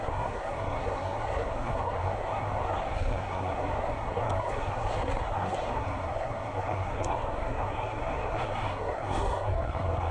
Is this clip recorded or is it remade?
remade